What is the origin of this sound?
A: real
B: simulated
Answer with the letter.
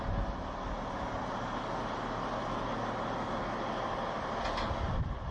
A